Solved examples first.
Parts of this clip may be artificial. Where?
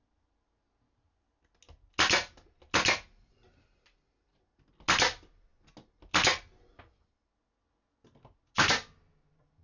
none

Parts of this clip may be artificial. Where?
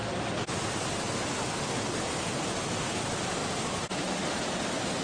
none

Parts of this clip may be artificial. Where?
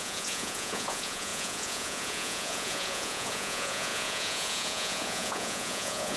0.0-6.2 (vocoder, Vocos)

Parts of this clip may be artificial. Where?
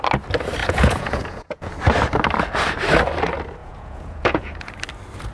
0.6-1.7 (vocoder, Vocos); 3.6-4.7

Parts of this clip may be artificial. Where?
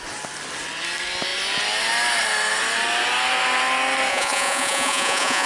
4.1-5.5 (vocoder, Vocos)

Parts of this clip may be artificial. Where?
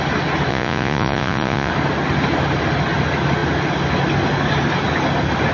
0.5-1.7 (vocoder, Vocos)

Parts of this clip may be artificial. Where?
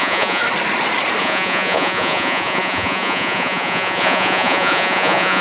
0.0-0.4 (vocoder, Vocos); 1.2-5.4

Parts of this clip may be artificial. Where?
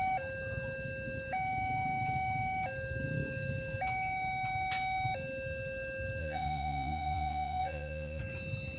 6.2-8.2 (vocoder, Vocos)